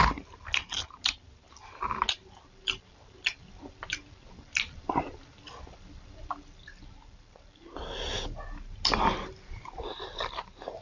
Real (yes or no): yes